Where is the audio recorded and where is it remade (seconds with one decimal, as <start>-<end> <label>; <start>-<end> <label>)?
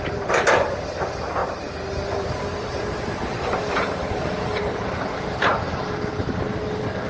0.0-1.4 remade; 1.4-2.2 recorded; 2.2-5.5 remade; 5.5-6.2 recorded; 6.2-7.1 remade